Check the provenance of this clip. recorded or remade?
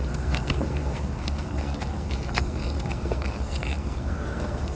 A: remade